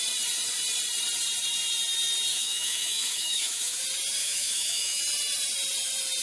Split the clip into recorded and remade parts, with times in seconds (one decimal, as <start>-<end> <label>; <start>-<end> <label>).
0.0-2.3 recorded; 2.3-3.8 remade; 3.8-4.2 recorded; 4.2-5.0 remade; 5.0-6.2 recorded

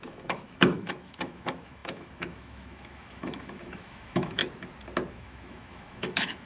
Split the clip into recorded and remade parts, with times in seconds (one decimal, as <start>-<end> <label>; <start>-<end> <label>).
0.0-4.4 remade; 4.4-5.1 recorded; 5.1-6.5 remade

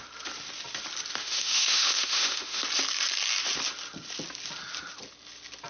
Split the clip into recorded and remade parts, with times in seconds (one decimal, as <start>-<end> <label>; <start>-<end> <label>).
0.0-1.2 recorded; 1.2-2.6 remade; 2.6-5.7 recorded

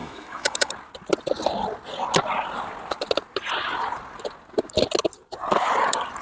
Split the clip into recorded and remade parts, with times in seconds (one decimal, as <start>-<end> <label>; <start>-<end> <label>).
0.0-0.7 remade; 0.7-6.2 recorded

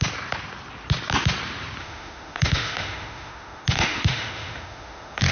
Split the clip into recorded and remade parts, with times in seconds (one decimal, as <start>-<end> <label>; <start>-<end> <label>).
0.0-1.8 recorded; 1.8-5.3 remade

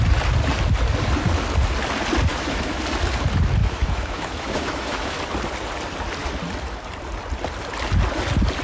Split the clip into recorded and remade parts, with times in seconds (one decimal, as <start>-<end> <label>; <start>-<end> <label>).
0.0-2.3 recorded; 2.3-2.8 remade; 2.8-3.6 recorded; 3.6-5.2 remade; 5.2-8.6 recorded